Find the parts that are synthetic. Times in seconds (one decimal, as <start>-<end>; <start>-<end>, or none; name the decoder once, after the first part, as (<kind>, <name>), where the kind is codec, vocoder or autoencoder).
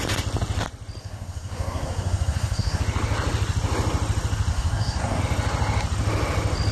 1.0-2.8 (codec, SNAC); 4.5-5.2